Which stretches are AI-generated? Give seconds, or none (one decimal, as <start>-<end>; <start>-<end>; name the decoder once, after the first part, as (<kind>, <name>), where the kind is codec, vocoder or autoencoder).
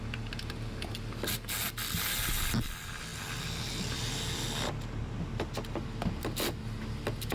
none